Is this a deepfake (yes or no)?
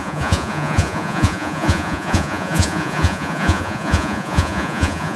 yes